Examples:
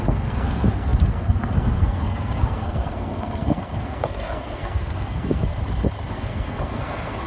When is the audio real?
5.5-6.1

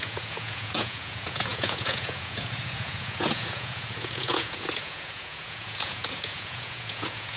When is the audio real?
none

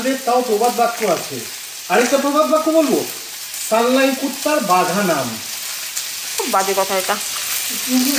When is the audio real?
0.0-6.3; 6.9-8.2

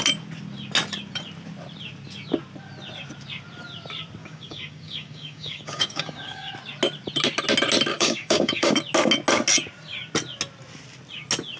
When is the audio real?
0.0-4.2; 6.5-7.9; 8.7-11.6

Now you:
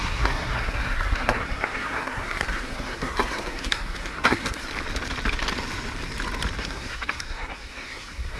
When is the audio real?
4.7-6.6

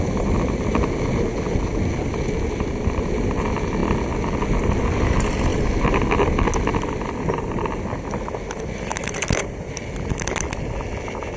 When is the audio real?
0.0-11.4